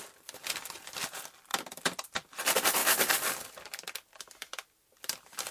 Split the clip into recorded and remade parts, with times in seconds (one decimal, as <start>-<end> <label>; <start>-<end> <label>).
0.0-5.5 recorded